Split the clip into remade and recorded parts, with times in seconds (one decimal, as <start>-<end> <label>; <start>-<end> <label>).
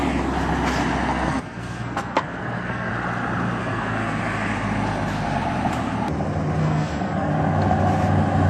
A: 0.0-1.1 recorded; 1.1-2.9 remade; 2.9-3.6 recorded; 3.6-4.2 remade; 4.2-6.6 recorded; 6.6-7.3 remade; 7.3-8.5 recorded